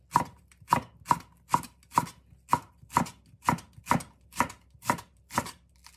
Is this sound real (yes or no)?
yes